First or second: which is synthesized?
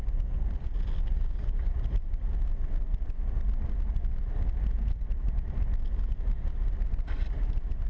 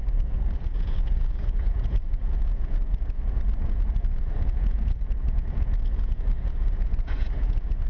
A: second